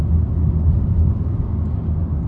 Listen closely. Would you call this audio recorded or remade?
recorded